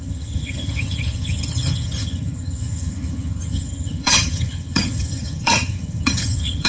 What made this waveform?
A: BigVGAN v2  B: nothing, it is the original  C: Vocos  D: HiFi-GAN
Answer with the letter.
D